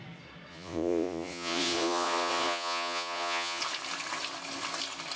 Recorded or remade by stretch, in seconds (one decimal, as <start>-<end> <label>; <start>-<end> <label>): 0.0-0.5 recorded; 0.5-3.6 remade; 3.6-5.2 recorded

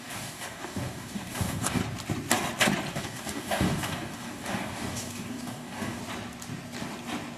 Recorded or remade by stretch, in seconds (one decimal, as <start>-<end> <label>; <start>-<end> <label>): 0.0-1.8 remade; 1.8-2.9 recorded; 2.9-6.0 remade; 6.0-7.4 recorded

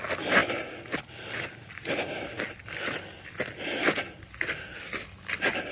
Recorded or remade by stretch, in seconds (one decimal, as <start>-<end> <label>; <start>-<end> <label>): 0.0-5.7 recorded

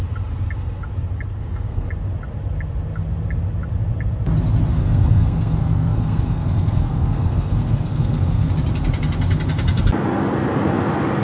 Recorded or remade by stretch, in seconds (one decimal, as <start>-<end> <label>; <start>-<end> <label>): 0.0-1.4 recorded; 1.4-1.9 remade; 1.9-4.7 recorded; 4.7-8.5 remade; 8.5-11.2 recorded

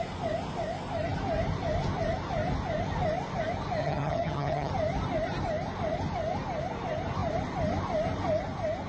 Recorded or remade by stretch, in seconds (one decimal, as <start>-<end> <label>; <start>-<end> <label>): 0.0-3.8 recorded; 3.8-4.7 remade; 4.7-8.9 recorded

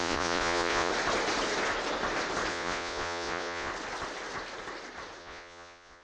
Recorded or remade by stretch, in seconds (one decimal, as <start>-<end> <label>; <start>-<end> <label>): 0.0-0.9 remade; 0.9-2.5 recorded; 2.5-3.7 remade; 3.7-5.2 recorded; 5.2-6.0 remade

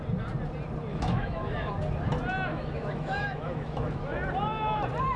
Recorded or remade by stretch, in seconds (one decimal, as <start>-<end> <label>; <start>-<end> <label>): 0.0-0.9 recorded; 0.9-1.7 remade; 1.7-2.5 recorded; 2.5-4.0 remade; 4.0-5.2 recorded

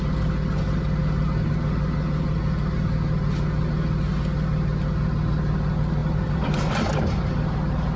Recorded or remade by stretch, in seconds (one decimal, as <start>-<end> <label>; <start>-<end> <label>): 0.0-6.0 recorded; 6.0-6.8 remade; 6.8-8.0 recorded